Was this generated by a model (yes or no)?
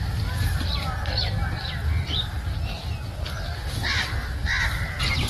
no